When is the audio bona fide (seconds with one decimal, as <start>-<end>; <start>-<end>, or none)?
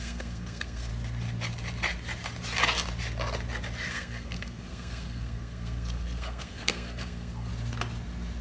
0.9-3.9; 7.5-8.4